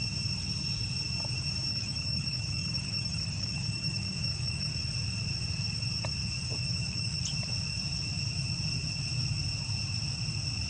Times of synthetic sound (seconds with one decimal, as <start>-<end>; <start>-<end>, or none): 1.7-4.7; 6.6-7.2